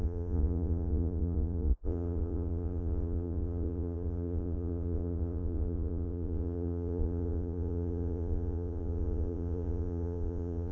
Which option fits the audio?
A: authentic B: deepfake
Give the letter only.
B